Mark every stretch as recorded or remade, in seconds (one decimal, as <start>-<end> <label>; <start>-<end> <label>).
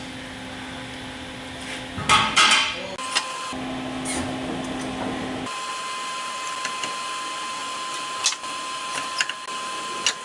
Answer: 0.0-10.2 recorded